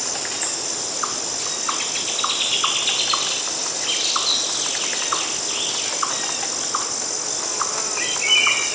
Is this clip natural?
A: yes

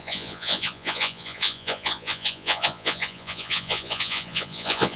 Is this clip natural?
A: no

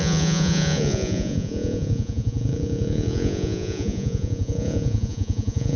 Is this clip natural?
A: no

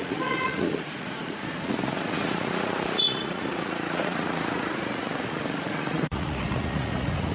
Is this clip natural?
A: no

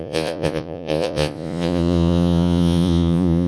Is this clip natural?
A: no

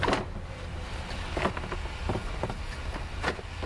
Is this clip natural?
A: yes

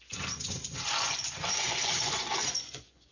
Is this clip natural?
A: no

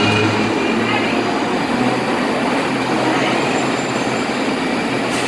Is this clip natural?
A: yes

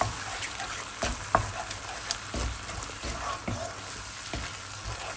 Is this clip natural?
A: yes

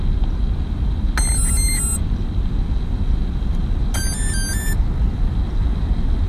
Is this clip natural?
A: yes